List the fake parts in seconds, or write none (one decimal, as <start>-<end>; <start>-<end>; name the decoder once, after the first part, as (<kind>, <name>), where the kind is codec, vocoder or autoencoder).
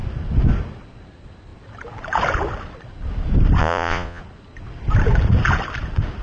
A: 3.6-4.2 (vocoder, Vocos)